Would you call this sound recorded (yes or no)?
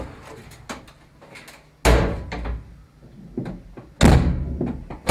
yes